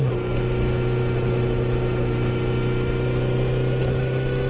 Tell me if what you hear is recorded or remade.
recorded